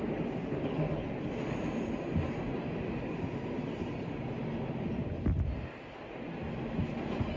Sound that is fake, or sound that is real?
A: real